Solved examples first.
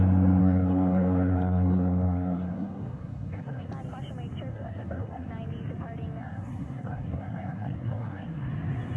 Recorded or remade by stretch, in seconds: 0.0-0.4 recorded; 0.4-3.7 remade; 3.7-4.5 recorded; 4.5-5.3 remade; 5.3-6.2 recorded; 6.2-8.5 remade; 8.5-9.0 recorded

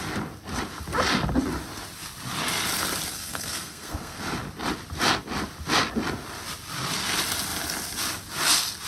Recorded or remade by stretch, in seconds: 0.0-3.1 recorded; 3.1-4.2 remade; 4.2-8.9 recorded

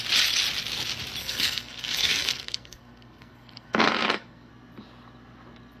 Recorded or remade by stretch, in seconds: 0.0-1.2 recorded; 1.2-4.5 remade; 4.5-5.8 recorded